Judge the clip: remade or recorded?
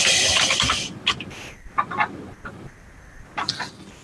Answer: remade